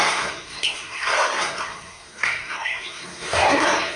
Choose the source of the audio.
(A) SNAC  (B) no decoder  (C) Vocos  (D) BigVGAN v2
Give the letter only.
A